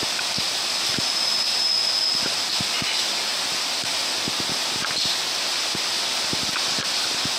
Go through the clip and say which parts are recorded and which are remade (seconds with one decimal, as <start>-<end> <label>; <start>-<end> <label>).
0.0-7.4 recorded